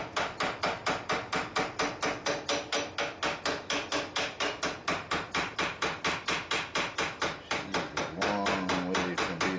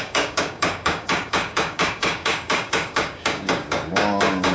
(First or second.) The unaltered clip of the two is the first